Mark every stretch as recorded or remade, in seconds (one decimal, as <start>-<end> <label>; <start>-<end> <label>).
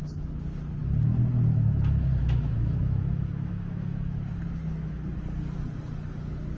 0.0-2.2 recorded; 2.2-4.3 remade; 4.3-6.6 recorded